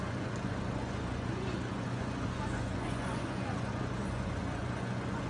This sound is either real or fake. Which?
fake